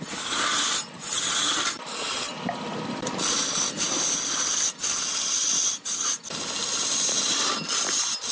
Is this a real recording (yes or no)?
yes